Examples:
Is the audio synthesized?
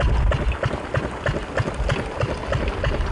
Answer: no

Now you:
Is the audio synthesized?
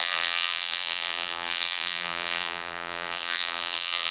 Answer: yes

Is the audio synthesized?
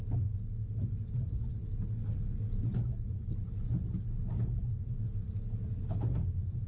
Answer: no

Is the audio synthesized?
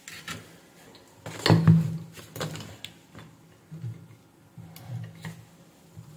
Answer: no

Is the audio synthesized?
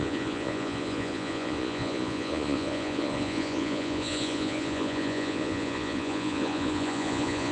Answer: yes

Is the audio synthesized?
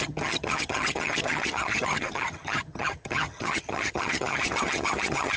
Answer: yes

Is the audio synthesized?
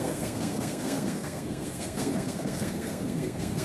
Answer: yes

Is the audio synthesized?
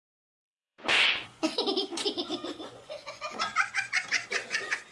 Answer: yes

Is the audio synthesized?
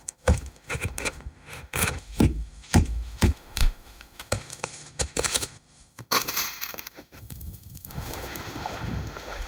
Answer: yes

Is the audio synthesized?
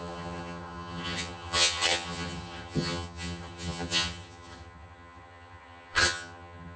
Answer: yes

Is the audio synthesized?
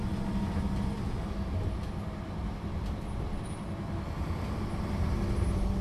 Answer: no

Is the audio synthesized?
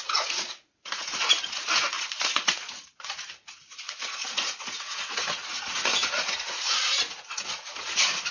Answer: yes